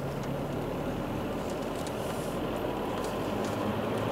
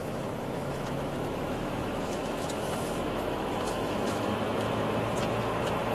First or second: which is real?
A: first